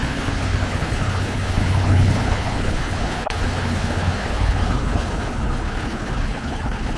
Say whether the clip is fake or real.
fake